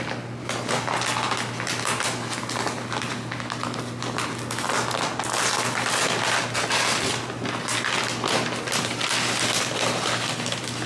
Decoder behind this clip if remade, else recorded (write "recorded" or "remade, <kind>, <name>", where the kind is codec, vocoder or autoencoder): recorded